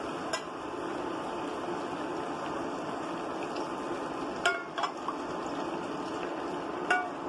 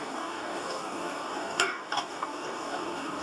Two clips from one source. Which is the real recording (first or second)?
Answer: first